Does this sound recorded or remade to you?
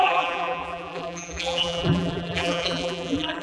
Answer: remade